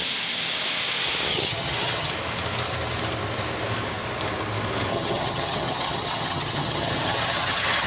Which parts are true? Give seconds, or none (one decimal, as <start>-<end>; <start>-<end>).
0.0-1.3; 2.1-4.9